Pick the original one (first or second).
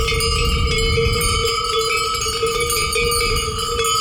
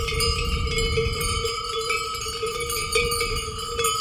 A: first